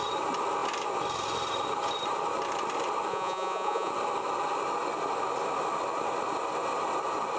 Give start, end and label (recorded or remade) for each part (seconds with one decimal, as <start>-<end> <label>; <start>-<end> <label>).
0.0-3.1 recorded; 3.1-3.9 remade; 3.9-7.4 recorded